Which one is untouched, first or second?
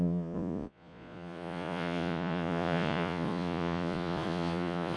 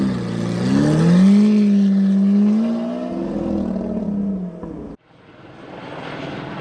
second